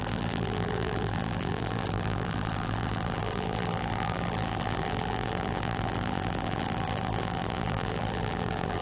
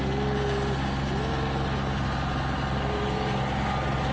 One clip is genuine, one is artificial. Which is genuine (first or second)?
second